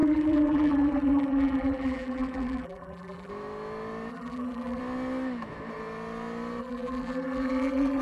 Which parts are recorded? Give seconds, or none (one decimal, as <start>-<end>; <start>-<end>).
3.3-4.1; 4.8-6.6